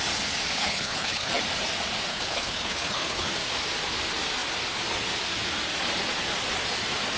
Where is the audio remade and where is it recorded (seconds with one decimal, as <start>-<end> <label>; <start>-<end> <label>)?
0.0-0.6 recorded; 0.6-1.4 remade; 1.4-2.1 recorded; 2.1-3.3 remade; 3.3-7.2 recorded